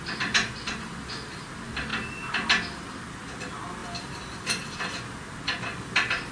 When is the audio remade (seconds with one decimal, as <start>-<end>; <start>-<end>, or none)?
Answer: none